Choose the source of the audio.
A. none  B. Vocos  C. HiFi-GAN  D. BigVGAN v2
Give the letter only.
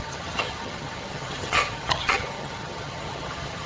C